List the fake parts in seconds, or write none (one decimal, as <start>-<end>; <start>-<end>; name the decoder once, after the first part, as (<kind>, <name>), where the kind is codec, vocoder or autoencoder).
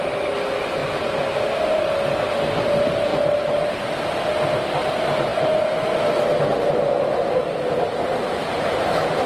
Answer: none